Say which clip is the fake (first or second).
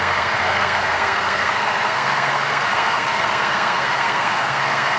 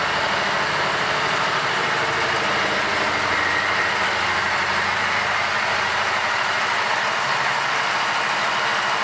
first